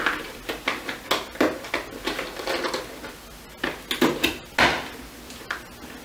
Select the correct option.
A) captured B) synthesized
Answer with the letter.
A